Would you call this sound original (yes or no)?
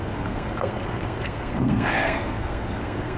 no